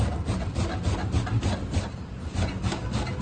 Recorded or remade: recorded